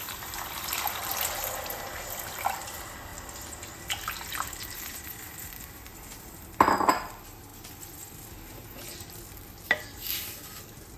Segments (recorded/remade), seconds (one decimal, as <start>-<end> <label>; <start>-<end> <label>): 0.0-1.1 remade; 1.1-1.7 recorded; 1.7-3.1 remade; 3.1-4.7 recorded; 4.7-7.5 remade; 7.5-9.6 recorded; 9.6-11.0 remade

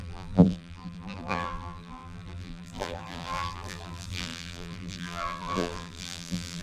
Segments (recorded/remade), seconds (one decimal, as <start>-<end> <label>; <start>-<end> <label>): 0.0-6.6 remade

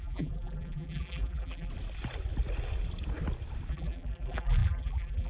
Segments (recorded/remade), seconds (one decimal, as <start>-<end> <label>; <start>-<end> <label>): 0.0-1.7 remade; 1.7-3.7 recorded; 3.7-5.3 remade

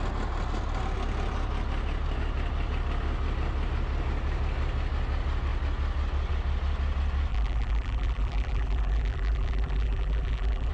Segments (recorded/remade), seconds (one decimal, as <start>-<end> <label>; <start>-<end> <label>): 0.0-7.3 recorded; 7.3-10.7 remade

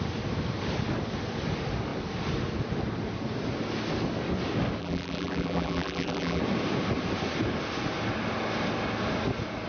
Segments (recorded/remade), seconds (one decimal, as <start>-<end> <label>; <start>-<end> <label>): 0.0-4.8 recorded; 4.8-6.4 remade; 6.4-9.7 recorded

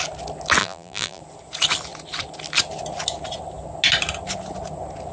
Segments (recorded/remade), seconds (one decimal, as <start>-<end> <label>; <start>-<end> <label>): 0.0-0.6 recorded; 0.6-1.2 remade; 1.2-5.1 recorded

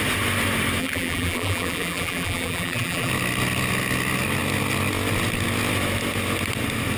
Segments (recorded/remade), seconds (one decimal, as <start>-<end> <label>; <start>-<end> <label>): 0.0-0.8 recorded; 0.8-3.1 remade; 3.1-7.0 recorded